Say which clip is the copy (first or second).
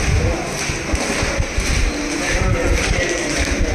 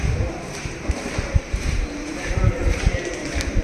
second